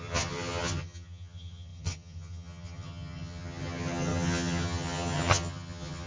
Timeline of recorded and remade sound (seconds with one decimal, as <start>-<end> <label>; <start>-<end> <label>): 0.0-6.1 remade